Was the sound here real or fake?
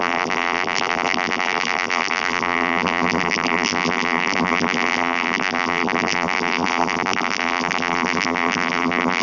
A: fake